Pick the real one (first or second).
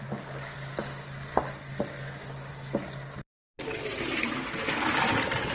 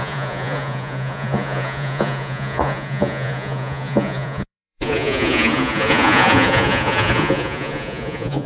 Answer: first